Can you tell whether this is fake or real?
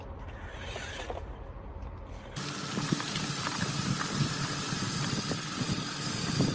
real